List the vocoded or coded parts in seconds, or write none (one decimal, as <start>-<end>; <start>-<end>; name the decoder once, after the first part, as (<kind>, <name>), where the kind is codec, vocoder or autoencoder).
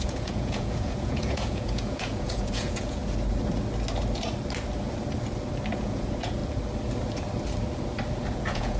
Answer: 0.0-3.0 (vocoder, Vocos); 5.8-6.4; 8.3-8.8